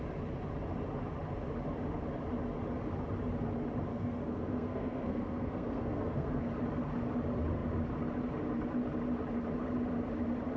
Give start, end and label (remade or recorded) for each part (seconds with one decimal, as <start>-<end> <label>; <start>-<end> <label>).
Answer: 0.0-3.9 recorded; 3.9-6.4 remade; 6.4-10.6 recorded